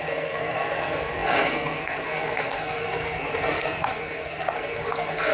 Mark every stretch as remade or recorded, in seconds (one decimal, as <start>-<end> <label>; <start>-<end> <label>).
0.0-5.3 remade